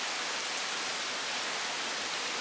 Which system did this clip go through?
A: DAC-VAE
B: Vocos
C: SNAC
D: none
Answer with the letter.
D